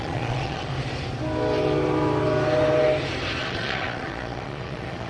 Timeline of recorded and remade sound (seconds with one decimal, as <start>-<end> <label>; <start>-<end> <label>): 0.0-0.7 remade; 0.7-3.4 recorded; 3.4-5.1 remade